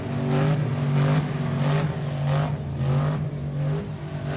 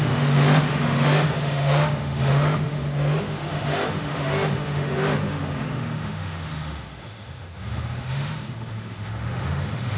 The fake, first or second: second